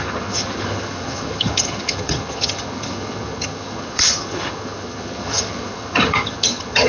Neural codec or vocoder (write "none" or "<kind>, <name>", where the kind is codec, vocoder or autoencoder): vocoder, HiFi-GAN